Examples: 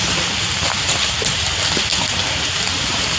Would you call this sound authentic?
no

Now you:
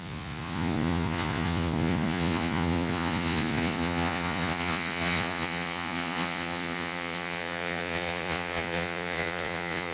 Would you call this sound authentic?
no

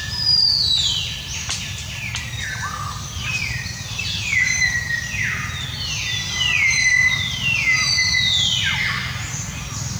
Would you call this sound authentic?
yes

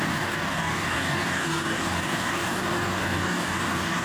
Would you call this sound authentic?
no